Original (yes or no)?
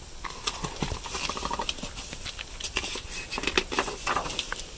yes